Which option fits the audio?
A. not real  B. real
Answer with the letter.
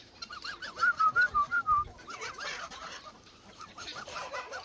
A